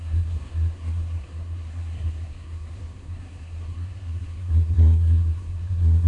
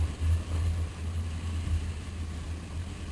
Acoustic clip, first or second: second